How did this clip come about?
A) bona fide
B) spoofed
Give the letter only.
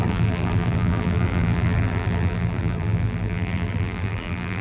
B